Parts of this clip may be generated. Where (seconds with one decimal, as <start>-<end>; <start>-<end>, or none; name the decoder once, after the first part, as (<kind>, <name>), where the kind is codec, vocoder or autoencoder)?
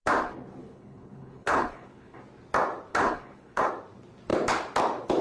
0.6-2.2 (codec, HILCodec); 2.9-3.7